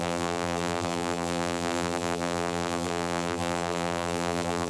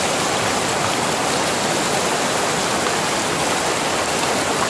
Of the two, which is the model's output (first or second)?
first